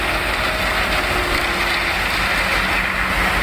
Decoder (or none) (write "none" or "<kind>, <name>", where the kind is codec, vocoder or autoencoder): none